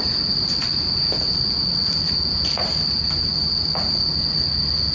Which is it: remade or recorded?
recorded